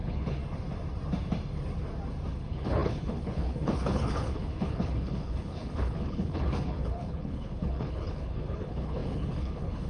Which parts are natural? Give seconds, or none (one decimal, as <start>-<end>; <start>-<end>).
0.4-2.3